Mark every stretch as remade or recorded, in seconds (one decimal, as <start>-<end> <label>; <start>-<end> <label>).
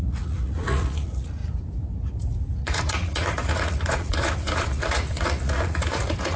0.0-1.4 remade; 1.4-2.6 recorded; 2.6-6.4 remade